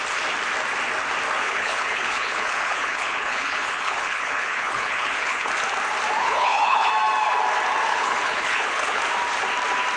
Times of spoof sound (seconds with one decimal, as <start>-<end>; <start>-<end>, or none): 1.4-5.5; 6.2-6.9; 7.9-9.0